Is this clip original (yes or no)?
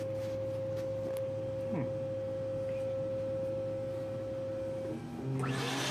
yes